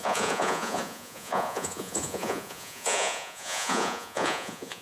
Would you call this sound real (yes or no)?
no